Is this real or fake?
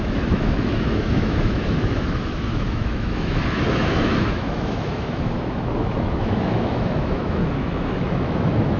fake